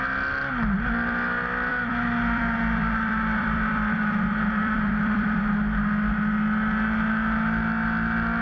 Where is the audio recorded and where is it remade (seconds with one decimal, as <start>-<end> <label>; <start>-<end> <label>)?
0.0-1.7 recorded; 1.7-2.4 remade; 2.4-2.8 recorded; 2.8-5.5 remade; 5.5-8.4 recorded